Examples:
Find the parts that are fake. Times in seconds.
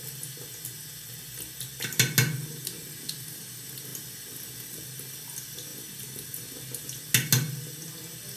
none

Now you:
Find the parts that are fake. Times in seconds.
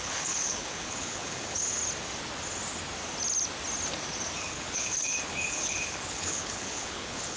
0.0-1.8 (codec, HILCodec); 4.4-7.4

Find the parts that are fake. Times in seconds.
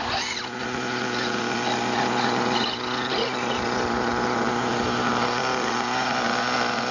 4.1-5.1 (vocoder, BigVGAN v2)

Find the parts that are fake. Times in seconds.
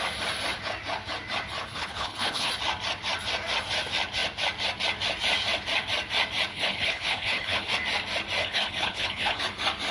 1.7-2.5 (codec, HILCodec); 6.5-7.7; 8.4-9.4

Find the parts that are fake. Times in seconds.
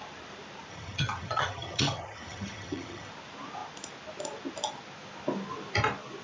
0.7-3.1 (vocoder, HiFi-GAN)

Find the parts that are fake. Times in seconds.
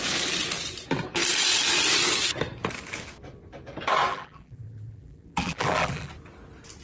4.1-6.1 (vocoder, BigVGAN v2)